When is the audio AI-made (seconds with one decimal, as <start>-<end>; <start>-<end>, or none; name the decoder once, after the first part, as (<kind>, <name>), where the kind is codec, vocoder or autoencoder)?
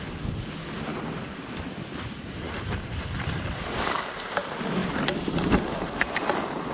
0.9-3.8 (vocoder, BigVGAN v2); 4.8-5.5